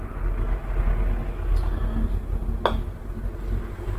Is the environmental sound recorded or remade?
recorded